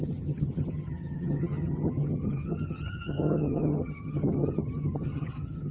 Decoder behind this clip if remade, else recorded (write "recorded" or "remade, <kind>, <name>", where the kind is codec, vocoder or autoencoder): remade, vocoder, HiFi-GAN